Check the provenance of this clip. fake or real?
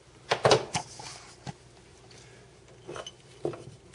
real